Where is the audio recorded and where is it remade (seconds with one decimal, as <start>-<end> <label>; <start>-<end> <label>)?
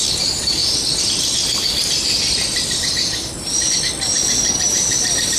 0.0-0.6 recorded; 0.6-3.8 remade; 3.8-5.4 recorded